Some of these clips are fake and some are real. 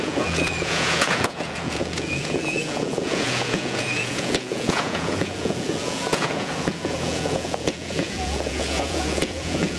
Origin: fake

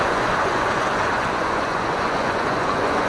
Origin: fake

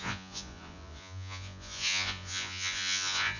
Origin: fake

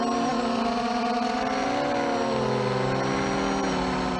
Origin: real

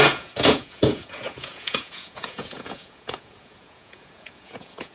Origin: fake